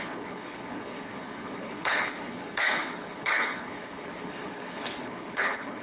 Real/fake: fake